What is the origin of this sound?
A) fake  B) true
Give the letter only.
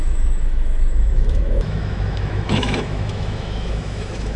A